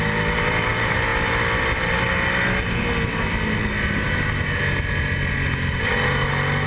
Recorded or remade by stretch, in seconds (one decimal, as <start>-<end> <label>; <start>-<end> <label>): 0.0-6.7 recorded